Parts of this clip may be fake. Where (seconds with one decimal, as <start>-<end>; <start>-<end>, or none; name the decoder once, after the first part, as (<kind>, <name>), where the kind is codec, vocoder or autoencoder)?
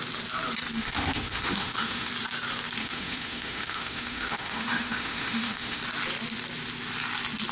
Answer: 0.8-2.1 (autoencoder, DAC-VAE); 2.8-5.8